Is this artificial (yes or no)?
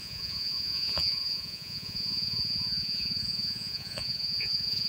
yes